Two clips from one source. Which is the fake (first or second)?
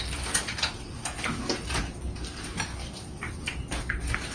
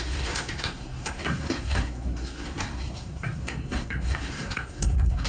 second